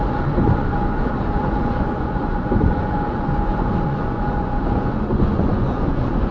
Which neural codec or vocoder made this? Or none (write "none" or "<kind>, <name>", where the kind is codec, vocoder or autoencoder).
vocoder, Vocos